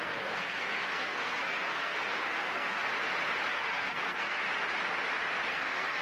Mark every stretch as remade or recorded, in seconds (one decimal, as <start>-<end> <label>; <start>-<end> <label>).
0.0-2.8 remade; 2.8-3.5 recorded; 3.5-4.4 remade; 4.4-5.5 recorded; 5.5-6.0 remade